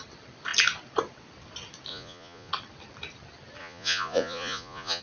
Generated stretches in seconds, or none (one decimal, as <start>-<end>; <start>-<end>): 1.9-2.5; 3.6-5.0